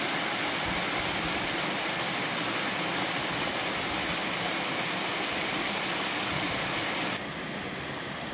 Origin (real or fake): real